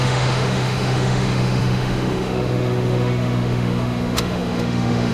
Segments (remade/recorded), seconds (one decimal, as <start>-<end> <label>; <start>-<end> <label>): 0.0-5.1 remade